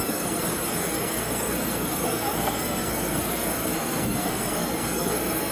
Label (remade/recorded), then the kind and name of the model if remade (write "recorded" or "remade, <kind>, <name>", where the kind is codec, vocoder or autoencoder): remade, codec, SNAC